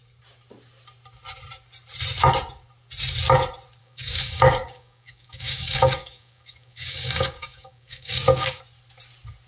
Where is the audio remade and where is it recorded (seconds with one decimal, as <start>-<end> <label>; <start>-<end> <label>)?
0.0-3.8 recorded; 3.8-8.6 remade; 8.6-9.5 recorded